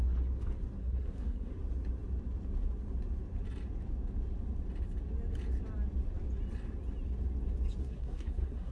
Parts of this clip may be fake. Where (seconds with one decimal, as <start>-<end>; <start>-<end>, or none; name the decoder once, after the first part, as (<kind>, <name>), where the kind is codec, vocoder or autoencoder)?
0.8-1.5 (codec, SNAC); 7.8-8.7